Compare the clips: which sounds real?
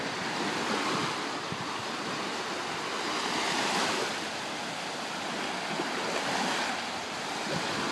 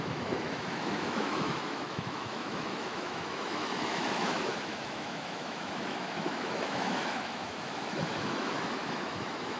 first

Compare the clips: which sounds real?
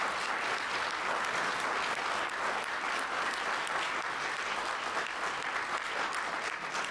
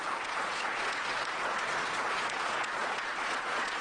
first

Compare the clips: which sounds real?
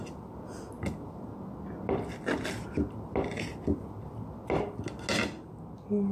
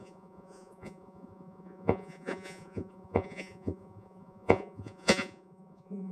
first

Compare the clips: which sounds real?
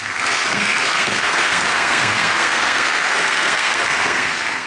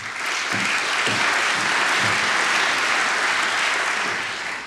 second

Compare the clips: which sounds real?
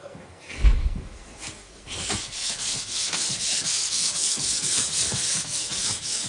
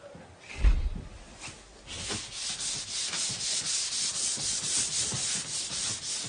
second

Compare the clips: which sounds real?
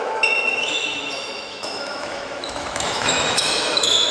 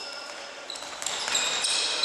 second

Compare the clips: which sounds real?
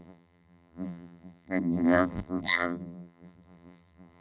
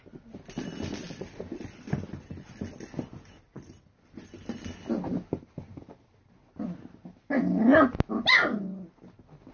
second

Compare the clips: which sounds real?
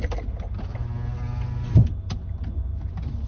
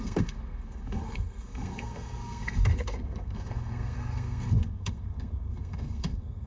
first